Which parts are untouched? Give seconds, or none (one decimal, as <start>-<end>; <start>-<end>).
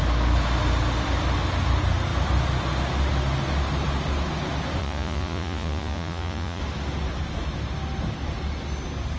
0.0-4.8; 6.6-9.2